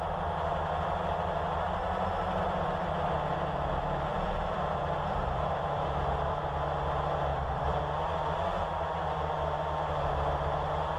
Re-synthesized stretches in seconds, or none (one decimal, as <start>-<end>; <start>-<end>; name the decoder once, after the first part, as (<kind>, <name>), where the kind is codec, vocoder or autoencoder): 4.1-6.4 (vocoder, BigVGAN v2); 7.3-7.8